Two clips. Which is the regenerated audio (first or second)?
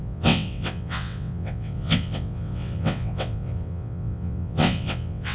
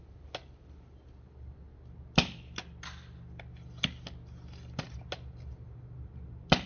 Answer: first